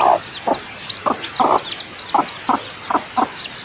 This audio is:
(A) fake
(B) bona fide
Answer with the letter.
B